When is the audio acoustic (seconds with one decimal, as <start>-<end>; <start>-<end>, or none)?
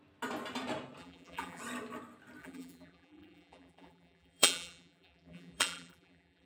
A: 0.0-1.0; 1.6-2.4